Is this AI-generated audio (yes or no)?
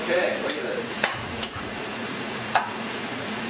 yes